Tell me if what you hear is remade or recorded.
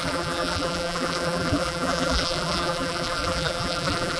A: remade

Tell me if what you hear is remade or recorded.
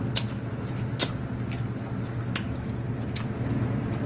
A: recorded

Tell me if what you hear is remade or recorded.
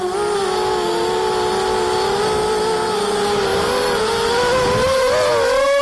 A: recorded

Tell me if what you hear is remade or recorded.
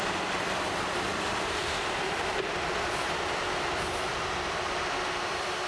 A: remade